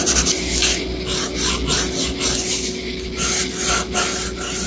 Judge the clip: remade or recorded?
recorded